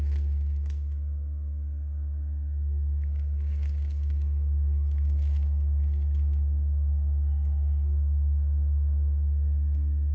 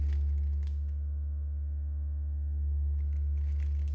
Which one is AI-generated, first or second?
first